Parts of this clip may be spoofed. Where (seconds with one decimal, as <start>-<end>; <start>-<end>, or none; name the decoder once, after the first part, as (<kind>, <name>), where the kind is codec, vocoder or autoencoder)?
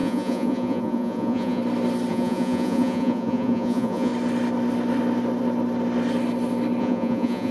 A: 0.0-1.6 (vocoder, Vocos); 2.1-4.1; 6.8-7.5